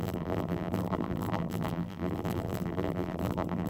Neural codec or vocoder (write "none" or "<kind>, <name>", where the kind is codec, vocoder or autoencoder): vocoder, BigVGAN v2